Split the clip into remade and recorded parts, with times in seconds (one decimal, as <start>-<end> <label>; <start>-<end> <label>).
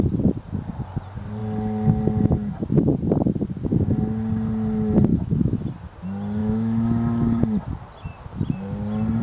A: 0.0-5.1 recorded; 5.1-5.6 remade; 5.6-6.4 recorded; 6.4-7.4 remade; 7.4-9.2 recorded